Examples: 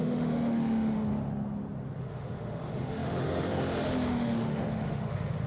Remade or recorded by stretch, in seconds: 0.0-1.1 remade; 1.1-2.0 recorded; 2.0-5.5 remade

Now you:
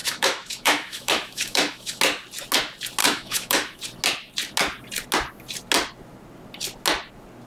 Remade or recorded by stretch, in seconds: 0.0-2.0 remade; 2.0-3.0 recorded; 3.0-3.8 remade; 3.8-7.5 recorded

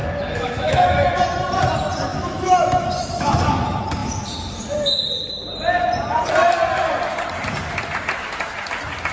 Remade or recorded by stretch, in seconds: 0.0-1.2 remade; 1.2-2.1 recorded; 2.1-3.5 remade; 3.5-9.1 recorded

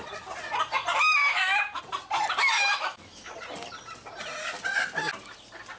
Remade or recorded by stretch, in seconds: 0.0-1.2 recorded; 1.2-1.8 remade; 1.8-2.4 recorded; 2.4-3.3 remade; 3.3-5.8 recorded